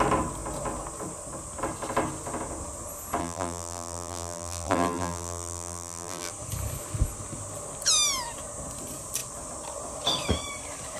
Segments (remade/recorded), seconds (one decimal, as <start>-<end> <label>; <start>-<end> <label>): 0.0-3.2 recorded; 3.2-6.3 remade; 6.3-11.0 recorded